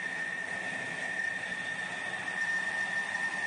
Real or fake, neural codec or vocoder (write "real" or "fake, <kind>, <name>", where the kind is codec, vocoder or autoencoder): real